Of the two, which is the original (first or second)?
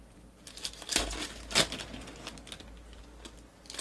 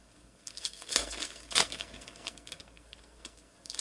first